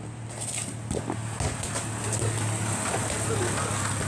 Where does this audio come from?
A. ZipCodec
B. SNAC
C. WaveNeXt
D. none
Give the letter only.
D